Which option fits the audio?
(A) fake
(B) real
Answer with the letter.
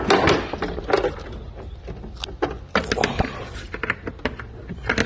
B